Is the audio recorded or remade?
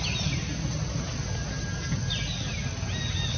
recorded